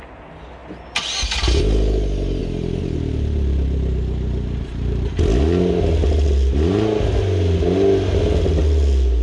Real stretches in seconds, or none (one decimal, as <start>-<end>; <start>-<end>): 0.0-2.4; 5.2-9.2